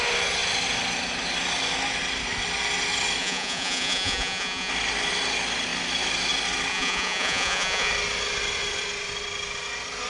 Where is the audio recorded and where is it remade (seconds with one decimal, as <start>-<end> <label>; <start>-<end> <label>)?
0.0-3.2 recorded; 3.2-4.7 remade; 4.7-6.7 recorded; 6.7-7.9 remade; 7.9-10.1 recorded